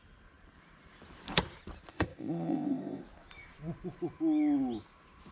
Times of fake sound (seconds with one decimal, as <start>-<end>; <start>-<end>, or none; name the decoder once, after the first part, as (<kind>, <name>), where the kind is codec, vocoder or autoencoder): 1.9-3.0 (codec, ZipCodec)